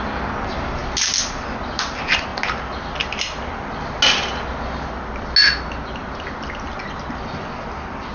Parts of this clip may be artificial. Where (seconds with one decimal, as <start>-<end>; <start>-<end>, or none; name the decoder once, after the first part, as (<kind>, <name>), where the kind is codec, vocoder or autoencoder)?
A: none